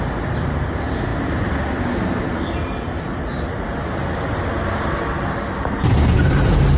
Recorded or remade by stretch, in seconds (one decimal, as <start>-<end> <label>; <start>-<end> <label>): 0.0-6.8 recorded